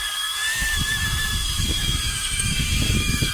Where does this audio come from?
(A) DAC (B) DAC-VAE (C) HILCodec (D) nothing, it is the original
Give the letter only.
B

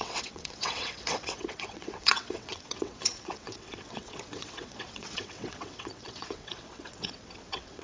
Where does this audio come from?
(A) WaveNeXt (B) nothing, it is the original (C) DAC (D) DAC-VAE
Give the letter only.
A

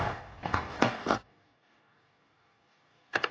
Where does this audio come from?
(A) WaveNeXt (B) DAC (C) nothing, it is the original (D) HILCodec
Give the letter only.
B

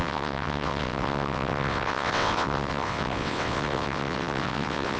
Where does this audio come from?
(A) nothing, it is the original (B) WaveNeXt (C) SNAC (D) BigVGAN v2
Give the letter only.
B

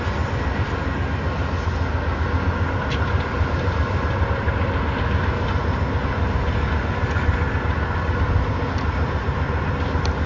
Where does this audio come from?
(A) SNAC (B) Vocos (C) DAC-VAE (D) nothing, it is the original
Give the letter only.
D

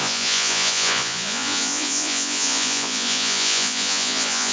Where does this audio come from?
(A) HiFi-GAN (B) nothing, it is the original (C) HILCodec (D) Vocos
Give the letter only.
D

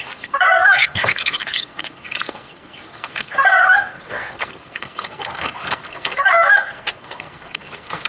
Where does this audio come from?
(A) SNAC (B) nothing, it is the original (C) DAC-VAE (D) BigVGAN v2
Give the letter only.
A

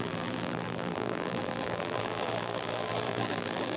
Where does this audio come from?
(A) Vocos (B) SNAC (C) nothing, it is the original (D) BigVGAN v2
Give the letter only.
D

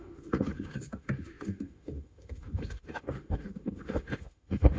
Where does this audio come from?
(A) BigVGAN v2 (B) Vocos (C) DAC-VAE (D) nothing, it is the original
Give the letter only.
C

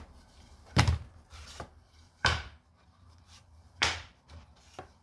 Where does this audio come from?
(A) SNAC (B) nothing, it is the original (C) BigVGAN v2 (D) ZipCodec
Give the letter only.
C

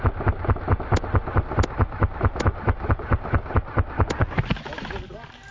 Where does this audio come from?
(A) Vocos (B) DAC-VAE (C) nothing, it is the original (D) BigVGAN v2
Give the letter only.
C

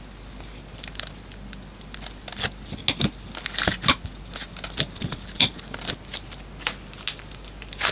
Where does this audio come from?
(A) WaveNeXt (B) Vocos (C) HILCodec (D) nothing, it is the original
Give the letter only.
D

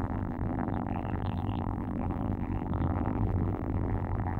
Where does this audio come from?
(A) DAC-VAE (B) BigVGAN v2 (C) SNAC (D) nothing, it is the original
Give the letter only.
B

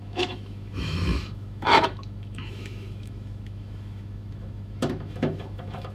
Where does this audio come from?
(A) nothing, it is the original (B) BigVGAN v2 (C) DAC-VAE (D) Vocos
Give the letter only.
C